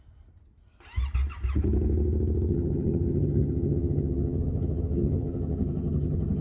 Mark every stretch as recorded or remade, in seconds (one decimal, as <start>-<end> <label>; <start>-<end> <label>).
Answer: 0.0-2.5 recorded; 2.5-6.4 remade